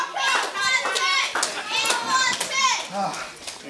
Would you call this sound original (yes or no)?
yes